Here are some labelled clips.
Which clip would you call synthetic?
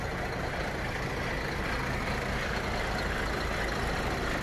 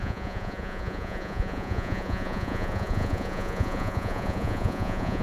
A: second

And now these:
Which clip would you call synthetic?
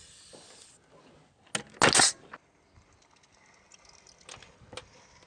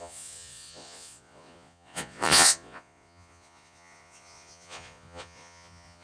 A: second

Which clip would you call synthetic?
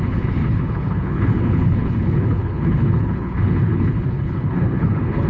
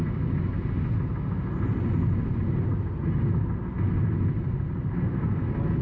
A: first